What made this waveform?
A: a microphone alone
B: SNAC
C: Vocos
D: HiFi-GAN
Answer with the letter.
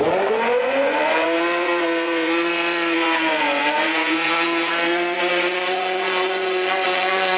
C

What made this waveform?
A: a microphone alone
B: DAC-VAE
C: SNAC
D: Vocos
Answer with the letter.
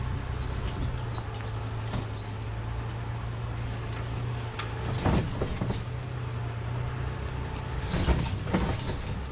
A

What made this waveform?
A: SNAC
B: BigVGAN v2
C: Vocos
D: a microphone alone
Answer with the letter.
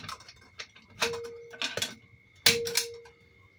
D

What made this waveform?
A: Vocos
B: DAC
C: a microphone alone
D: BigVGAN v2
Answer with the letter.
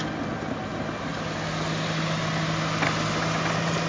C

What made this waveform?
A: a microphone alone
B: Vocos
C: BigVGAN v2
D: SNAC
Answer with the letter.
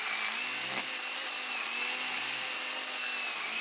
A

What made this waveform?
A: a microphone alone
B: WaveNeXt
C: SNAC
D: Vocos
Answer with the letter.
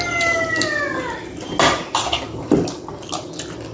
A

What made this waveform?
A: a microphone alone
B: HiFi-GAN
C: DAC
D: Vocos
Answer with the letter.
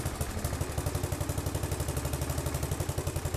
A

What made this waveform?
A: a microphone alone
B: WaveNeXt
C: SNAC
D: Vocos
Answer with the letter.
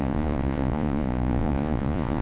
D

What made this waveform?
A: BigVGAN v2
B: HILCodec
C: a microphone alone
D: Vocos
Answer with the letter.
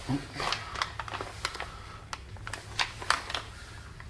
C